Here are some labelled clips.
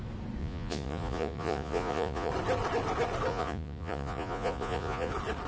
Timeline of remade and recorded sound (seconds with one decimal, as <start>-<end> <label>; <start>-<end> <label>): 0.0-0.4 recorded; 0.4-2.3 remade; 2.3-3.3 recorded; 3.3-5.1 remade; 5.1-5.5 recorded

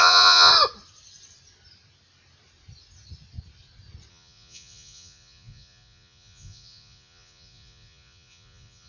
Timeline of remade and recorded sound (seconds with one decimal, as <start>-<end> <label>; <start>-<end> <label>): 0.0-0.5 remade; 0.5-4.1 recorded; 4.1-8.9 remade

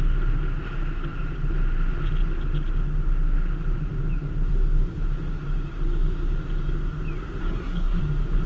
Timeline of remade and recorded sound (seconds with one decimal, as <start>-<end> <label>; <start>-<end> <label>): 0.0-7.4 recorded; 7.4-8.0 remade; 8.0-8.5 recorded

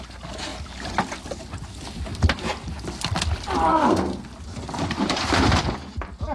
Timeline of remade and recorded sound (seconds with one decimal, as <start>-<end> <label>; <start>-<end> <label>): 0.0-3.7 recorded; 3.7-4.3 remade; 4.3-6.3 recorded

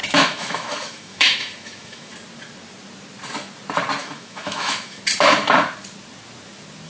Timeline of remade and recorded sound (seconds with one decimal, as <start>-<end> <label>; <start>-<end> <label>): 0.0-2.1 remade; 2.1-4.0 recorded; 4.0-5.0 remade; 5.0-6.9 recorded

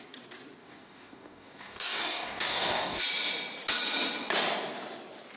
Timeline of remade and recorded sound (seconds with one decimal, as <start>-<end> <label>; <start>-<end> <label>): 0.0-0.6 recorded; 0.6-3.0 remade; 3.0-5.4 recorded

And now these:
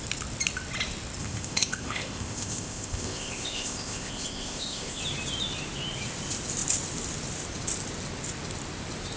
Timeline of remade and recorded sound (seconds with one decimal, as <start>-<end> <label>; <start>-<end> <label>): 0.0-1.2 recorded; 1.2-5.0 remade; 5.0-9.2 recorded

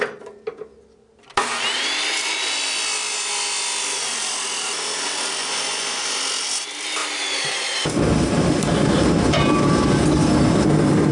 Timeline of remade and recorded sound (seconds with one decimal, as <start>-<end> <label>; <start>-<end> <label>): 0.0-5.4 recorded; 5.4-6.0 remade; 6.0-11.1 recorded